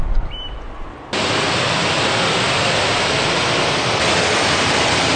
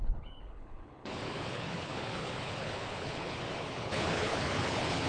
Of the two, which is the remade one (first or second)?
second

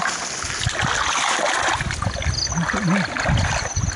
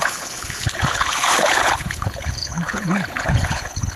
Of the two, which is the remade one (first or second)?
second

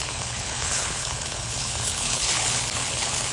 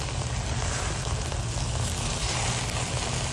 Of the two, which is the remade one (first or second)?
first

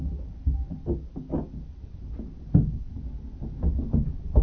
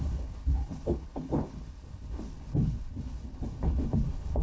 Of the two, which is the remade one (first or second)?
second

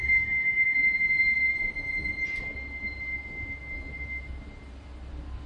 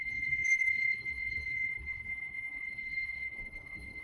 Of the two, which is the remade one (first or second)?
second